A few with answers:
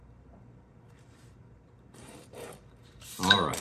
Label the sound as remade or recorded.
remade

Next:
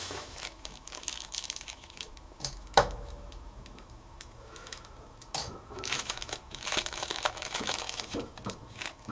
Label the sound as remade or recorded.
remade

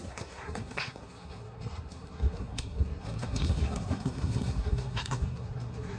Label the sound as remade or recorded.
remade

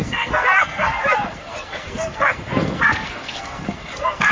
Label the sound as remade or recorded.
remade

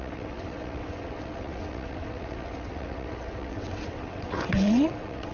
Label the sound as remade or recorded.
remade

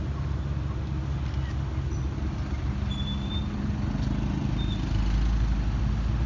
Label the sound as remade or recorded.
recorded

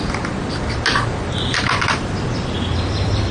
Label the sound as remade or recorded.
recorded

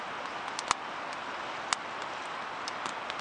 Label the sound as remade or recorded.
recorded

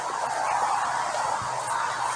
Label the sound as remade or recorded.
recorded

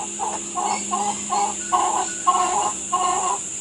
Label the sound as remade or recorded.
recorded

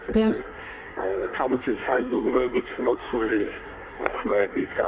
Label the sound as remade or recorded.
remade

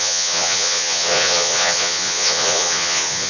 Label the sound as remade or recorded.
remade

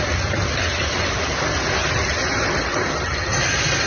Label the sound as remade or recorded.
recorded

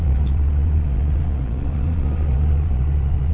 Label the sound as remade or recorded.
remade